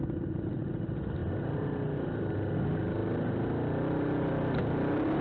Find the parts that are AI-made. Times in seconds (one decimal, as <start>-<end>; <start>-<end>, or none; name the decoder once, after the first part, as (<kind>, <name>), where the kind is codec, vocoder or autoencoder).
none